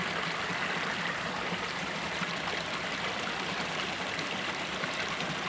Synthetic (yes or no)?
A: no